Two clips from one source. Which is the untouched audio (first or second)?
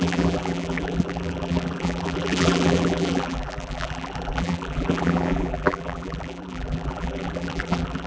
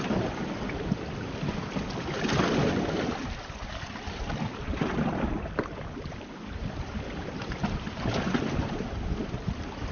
second